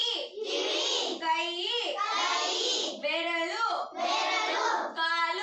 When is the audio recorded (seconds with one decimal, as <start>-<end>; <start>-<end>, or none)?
0.0-5.4